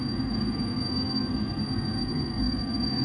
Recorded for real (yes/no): no